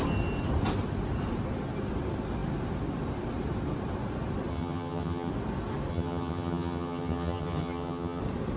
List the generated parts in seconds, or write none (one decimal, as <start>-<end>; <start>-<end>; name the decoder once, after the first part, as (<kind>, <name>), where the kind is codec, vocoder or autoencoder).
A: 4.5-5.3 (vocoder, HiFi-GAN); 5.9-8.2